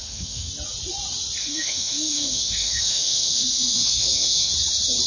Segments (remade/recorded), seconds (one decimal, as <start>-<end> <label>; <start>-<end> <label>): 0.0-0.5 remade; 0.5-1.4 recorded; 1.4-4.5 remade; 4.5-5.1 recorded